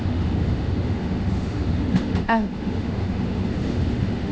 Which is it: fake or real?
fake